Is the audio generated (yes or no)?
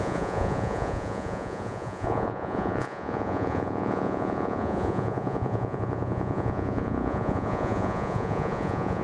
yes